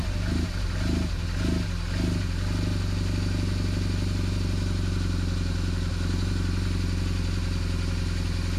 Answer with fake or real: real